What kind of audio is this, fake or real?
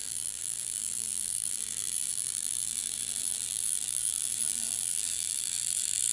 fake